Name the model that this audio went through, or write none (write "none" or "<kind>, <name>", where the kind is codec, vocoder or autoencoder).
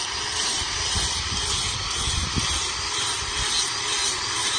none